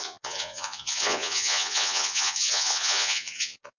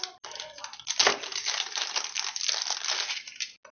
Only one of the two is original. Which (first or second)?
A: second